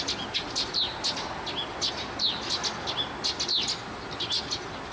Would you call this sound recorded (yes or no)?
yes